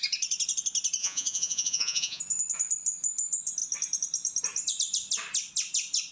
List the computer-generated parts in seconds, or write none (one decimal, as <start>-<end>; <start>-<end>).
1.0-2.2